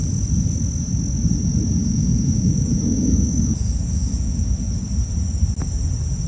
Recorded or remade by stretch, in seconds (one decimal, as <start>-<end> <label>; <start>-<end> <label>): 0.0-1.8 recorded; 1.8-4.6 remade; 4.6-6.3 recorded